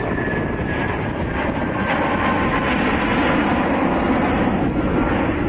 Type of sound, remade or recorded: recorded